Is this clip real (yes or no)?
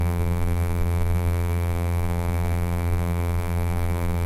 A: no